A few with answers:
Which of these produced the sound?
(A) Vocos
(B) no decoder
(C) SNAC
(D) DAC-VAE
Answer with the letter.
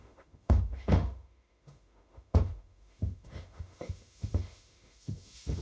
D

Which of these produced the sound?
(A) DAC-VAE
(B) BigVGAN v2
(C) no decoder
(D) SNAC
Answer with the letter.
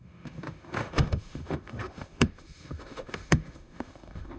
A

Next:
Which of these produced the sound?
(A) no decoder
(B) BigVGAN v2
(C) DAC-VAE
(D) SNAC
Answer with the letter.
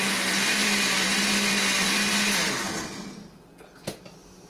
A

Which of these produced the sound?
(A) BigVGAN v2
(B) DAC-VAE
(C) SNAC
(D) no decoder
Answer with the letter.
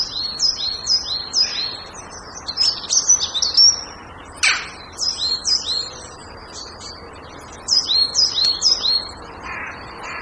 D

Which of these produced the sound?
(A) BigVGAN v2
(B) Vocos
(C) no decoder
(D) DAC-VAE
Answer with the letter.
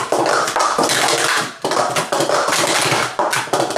C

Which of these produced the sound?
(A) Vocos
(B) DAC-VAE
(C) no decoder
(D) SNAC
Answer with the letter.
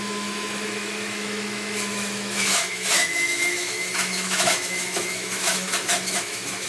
B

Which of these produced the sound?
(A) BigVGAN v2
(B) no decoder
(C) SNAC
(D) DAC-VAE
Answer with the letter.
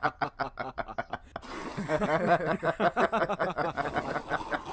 B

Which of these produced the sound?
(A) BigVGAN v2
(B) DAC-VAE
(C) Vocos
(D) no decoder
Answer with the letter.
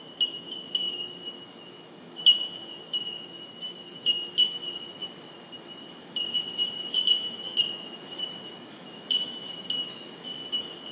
B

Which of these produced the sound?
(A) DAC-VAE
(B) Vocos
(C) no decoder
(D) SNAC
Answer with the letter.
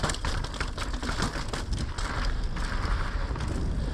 C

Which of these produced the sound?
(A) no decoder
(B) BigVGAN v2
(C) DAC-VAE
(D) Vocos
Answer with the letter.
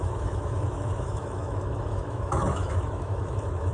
C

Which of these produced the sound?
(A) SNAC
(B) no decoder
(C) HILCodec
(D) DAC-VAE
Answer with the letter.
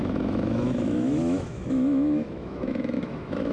D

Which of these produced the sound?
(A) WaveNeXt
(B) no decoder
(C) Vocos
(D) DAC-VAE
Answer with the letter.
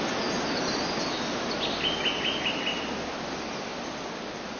B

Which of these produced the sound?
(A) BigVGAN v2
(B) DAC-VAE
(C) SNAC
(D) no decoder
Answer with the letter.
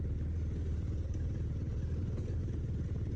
D